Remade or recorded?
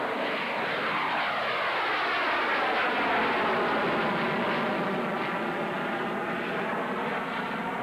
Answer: recorded